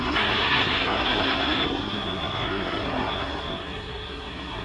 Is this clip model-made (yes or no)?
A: yes